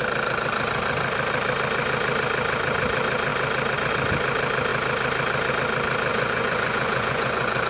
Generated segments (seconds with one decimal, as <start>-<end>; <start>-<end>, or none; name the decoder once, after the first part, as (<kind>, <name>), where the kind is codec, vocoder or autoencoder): 6.1-7.7 (vocoder, Vocos)

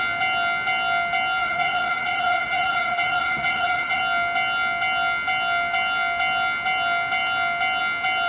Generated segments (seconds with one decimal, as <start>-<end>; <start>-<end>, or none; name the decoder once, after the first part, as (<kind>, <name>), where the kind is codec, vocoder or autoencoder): 1.4-4.0 (vocoder, Vocos)